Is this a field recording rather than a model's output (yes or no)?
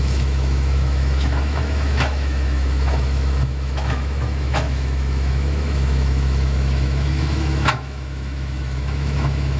no